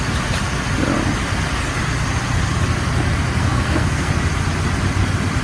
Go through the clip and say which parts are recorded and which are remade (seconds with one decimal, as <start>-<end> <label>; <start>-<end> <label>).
0.0-3.4 recorded; 3.4-4.1 remade; 4.1-5.4 recorded